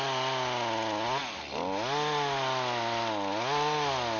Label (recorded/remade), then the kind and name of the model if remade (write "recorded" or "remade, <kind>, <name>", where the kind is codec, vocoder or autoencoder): recorded